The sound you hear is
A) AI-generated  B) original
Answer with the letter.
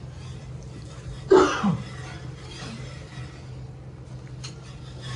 B